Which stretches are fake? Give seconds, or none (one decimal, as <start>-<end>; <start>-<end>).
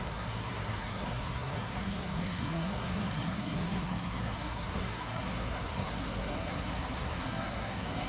0.0-8.1